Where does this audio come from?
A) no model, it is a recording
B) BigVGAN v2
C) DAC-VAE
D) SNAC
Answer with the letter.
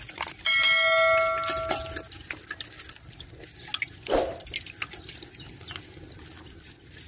A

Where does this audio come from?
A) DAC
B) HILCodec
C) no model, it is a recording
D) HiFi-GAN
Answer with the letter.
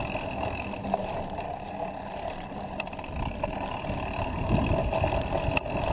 C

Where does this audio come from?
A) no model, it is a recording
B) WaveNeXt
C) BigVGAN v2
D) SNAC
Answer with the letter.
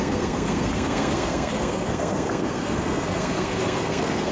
D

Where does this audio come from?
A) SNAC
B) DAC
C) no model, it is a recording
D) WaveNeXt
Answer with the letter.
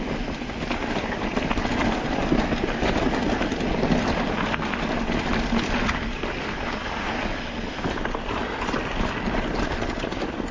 C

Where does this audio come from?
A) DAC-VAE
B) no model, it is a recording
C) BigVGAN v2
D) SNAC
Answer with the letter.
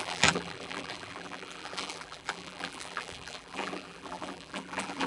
C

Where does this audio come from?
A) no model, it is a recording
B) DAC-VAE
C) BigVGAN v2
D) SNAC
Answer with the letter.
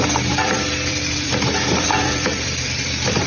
C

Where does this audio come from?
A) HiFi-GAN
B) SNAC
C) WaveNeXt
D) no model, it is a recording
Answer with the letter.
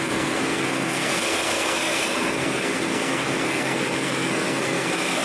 B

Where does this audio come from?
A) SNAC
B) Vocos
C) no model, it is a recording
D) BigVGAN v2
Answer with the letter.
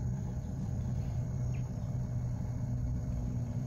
D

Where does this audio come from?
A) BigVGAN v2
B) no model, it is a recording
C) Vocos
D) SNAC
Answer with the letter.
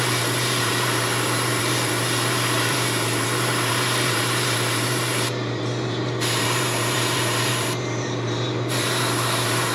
A